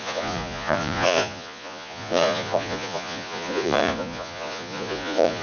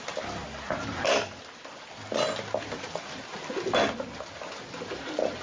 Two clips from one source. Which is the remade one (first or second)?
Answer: first